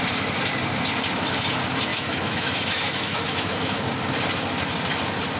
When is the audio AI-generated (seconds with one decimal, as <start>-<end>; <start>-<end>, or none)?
1.9-3.8